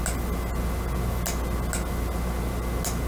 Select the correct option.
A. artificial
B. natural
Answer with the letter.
B